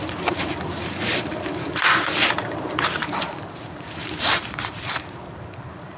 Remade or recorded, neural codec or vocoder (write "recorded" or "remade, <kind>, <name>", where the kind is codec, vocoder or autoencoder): remade, vocoder, BigVGAN v2